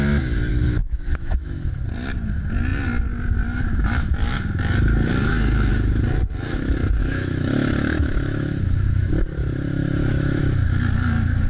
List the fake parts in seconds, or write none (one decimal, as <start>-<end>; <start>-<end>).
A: 0.5-1.8; 7.0-9.1; 9.8-10.4